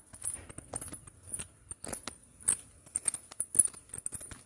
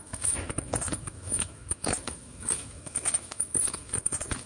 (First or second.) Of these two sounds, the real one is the first